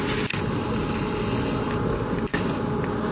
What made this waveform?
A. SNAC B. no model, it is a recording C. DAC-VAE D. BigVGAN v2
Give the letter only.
B